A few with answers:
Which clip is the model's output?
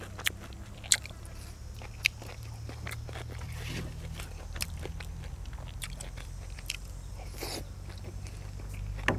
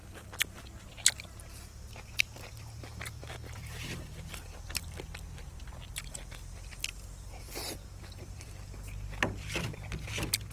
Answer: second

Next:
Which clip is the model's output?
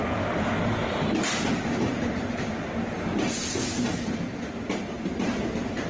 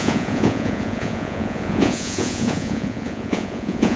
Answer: second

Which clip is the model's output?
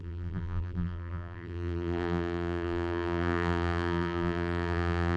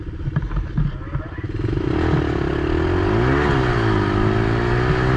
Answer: first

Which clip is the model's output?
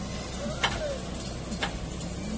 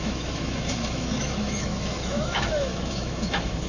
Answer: second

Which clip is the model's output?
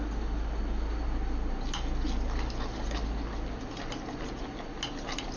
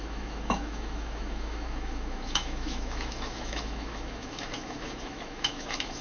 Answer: second